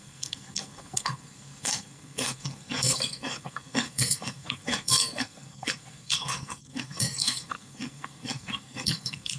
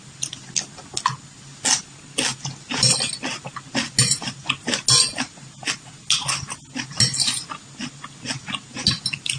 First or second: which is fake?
first